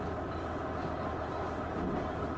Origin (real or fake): real